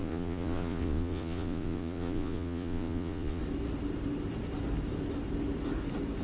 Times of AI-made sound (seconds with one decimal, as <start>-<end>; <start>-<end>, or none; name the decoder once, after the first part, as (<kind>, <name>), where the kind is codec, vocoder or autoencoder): 0.0-3.4 (vocoder, Vocos)